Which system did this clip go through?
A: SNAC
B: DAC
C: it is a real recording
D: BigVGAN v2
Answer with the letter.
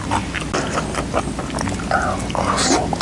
C